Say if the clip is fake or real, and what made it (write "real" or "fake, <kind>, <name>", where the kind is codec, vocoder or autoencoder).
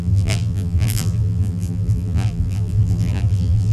fake, vocoder, BigVGAN v2